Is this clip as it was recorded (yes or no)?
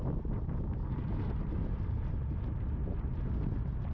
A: yes